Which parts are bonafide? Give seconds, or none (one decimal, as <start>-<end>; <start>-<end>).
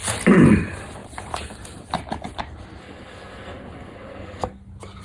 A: 0.0-2.8; 4.6-5.0